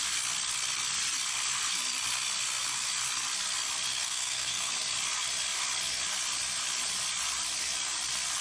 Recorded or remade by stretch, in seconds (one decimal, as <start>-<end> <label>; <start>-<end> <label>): 0.0-3.9 recorded; 3.9-4.7 remade; 4.7-8.4 recorded